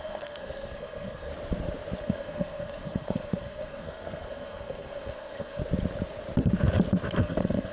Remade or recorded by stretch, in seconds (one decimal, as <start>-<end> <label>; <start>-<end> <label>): 0.0-1.3 remade; 1.3-2.0 recorded; 2.0-5.6 remade; 5.6-7.2 recorded; 7.2-7.7 remade

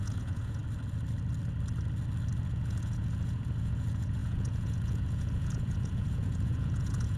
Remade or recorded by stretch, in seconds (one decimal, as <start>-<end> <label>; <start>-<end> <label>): 0.0-0.6 remade; 0.6-2.4 recorded; 2.4-7.2 remade

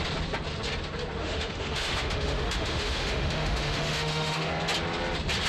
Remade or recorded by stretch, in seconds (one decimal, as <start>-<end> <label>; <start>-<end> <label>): 0.0-1.2 recorded; 1.2-4.5 remade; 4.5-5.5 recorded

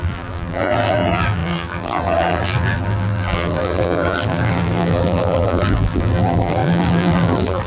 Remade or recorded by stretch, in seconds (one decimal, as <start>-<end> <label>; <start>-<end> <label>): 0.0-7.7 remade

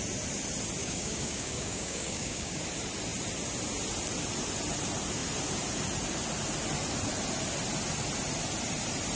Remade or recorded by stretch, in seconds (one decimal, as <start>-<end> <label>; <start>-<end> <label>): 0.0-0.8 recorded; 0.8-2.6 remade; 2.6-9.2 recorded

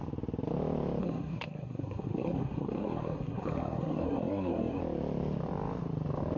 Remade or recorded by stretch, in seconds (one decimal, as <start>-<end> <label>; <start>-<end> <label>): 0.0-1.0 recorded; 1.0-4.8 remade; 4.8-6.4 recorded

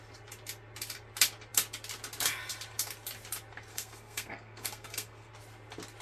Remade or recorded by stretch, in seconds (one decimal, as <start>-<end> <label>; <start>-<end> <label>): 0.0-3.7 recorded; 3.7-5.3 remade; 5.3-6.0 recorded